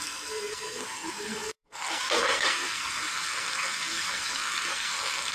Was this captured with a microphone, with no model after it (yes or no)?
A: no